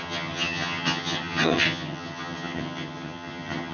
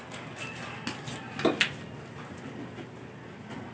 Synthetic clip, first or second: first